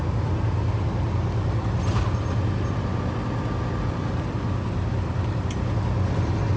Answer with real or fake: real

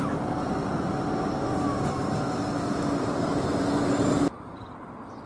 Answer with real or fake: real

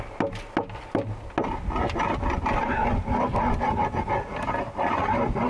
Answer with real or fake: real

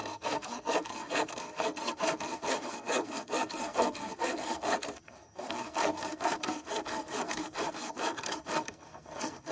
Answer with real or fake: fake